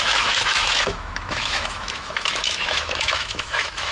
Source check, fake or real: fake